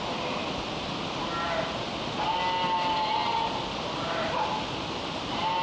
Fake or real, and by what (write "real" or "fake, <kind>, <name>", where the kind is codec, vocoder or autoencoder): real